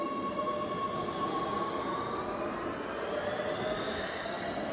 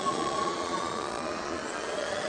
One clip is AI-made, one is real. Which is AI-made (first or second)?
second